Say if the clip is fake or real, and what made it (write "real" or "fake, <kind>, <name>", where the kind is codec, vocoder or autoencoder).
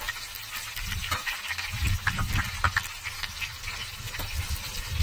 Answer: real